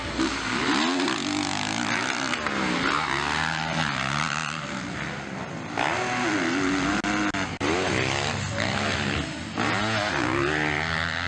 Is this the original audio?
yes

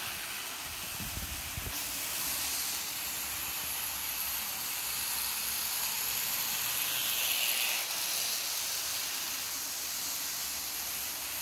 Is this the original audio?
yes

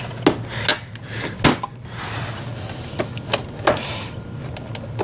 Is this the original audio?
yes